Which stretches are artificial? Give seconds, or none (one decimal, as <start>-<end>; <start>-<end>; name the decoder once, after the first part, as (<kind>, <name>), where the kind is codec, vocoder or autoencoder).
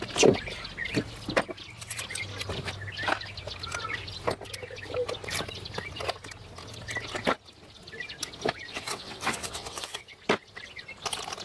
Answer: 8.7-10.1 (vocoder, WaveNeXt)